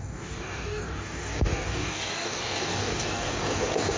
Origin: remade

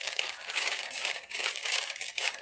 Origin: remade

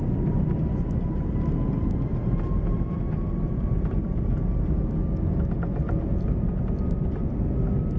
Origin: recorded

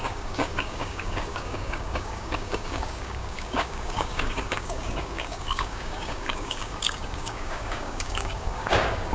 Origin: remade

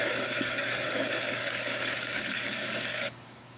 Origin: remade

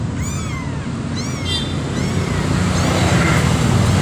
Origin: recorded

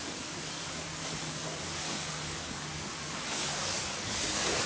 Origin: remade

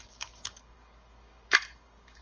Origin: remade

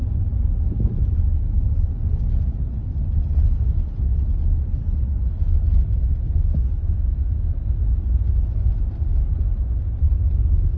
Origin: recorded